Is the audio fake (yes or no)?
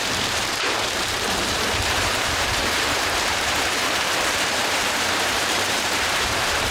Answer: yes